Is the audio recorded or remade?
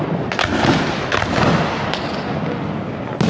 recorded